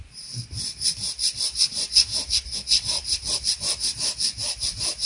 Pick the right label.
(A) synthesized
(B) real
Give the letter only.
B